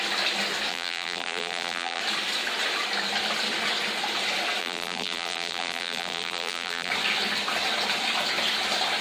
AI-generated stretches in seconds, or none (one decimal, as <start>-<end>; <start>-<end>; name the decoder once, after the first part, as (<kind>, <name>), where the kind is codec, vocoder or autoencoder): 0.7-2.0 (vocoder, BigVGAN v2); 4.6-6.9